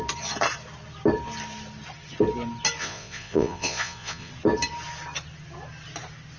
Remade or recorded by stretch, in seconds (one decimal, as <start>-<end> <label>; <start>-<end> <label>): 0.0-2.8 recorded; 2.8-4.3 remade; 4.3-6.4 recorded